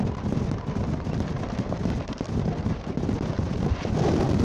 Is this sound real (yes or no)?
yes